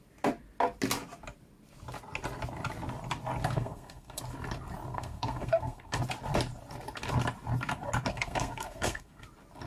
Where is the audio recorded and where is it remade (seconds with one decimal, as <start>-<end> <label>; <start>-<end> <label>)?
0.0-3.4 recorded; 3.4-4.2 remade; 4.2-4.9 recorded; 4.9-6.0 remade; 6.0-8.1 recorded; 8.1-9.2 remade; 9.2-9.7 recorded